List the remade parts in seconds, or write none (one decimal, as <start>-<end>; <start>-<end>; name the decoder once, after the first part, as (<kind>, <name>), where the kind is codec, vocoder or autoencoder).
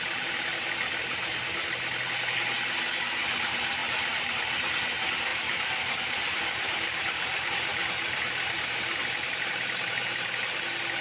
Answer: 3.8-4.3 (vocoder, BigVGAN v2); 5.3-7.5; 9.0-10.4